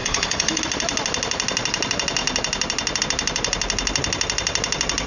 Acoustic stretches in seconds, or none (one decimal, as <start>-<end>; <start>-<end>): 0.6-5.1